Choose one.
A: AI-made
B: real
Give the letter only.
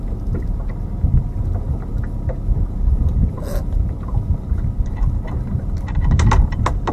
B